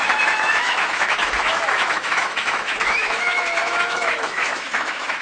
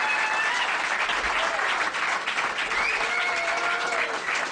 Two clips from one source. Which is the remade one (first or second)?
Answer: first